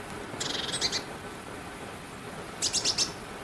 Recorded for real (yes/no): yes